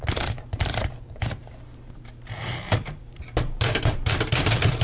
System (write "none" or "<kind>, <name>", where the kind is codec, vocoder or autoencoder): vocoder, BigVGAN v2